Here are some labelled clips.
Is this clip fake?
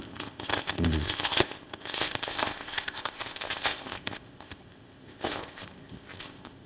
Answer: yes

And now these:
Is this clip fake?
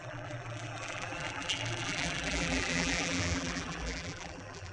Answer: yes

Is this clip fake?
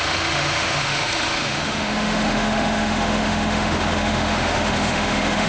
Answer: yes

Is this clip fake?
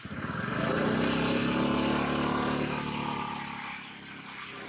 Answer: no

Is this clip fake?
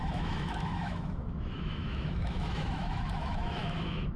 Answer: yes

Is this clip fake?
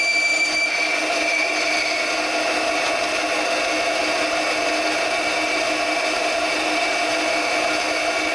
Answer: no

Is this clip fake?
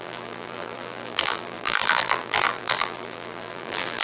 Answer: yes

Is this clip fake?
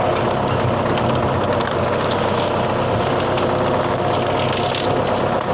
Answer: no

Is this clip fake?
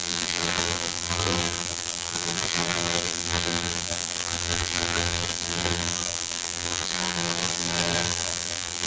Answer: yes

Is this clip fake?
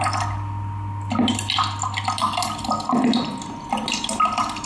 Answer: no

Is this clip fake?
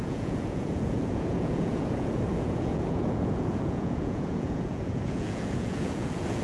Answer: yes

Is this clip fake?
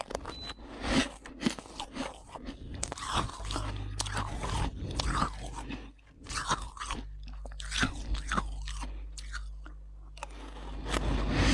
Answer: no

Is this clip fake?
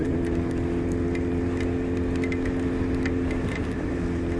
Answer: no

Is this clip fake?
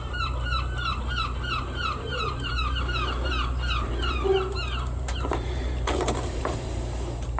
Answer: yes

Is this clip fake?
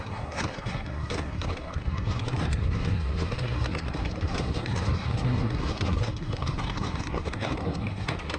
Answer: yes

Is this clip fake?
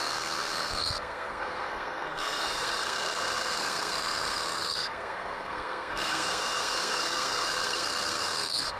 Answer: yes